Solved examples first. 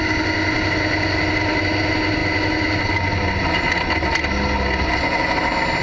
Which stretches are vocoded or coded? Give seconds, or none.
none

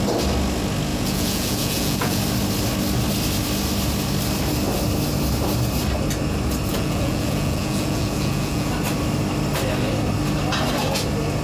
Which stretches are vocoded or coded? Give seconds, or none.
0.9-2.2 (vocoder, Vocos); 6.7-8.7

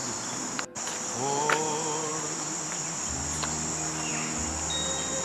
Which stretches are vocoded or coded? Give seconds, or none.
0.0-1.4 (vocoder, BigVGAN v2); 2.1-3.0; 4.1-5.2